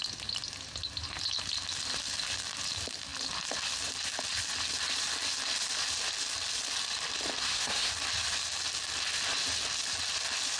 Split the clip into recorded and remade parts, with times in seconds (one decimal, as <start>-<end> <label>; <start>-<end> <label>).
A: 0.0-7.4 recorded; 7.4-7.9 remade; 7.9-10.6 recorded